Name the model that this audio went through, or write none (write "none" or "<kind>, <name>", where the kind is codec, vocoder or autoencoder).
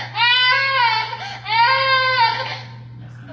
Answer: none